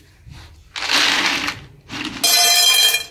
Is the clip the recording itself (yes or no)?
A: yes